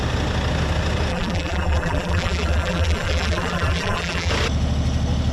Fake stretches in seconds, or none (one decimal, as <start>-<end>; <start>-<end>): 1.1-4.3